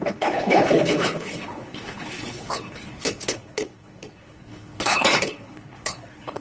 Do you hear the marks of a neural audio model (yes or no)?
yes